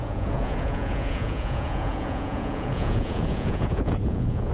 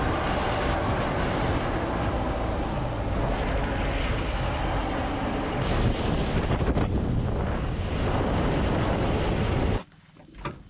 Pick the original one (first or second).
second